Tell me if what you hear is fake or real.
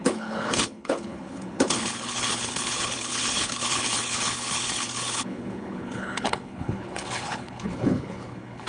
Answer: fake